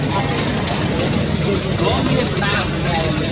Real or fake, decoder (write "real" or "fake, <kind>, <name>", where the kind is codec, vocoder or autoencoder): real